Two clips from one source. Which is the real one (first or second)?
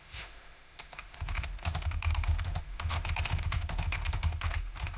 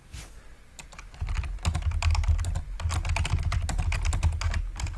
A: second